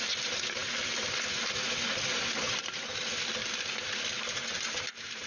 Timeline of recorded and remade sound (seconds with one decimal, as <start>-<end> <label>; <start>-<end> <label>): 0.0-5.3 recorded